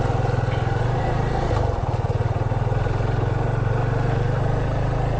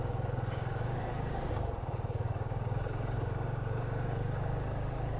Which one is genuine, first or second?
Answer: first